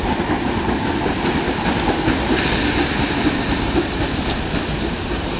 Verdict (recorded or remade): recorded